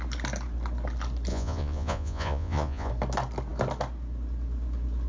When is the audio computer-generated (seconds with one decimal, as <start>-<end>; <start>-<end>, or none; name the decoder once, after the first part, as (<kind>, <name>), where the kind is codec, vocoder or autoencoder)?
1.3-2.9 (vocoder, Vocos)